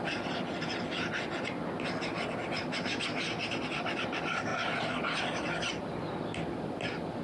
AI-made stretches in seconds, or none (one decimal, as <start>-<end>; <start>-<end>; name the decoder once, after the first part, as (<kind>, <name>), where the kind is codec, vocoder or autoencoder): none